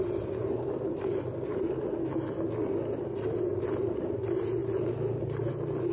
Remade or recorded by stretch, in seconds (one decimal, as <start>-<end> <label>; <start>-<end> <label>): 0.0-4.6 recorded; 4.6-5.5 remade; 5.5-5.9 recorded